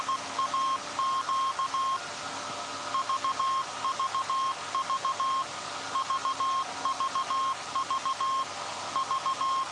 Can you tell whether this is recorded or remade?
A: recorded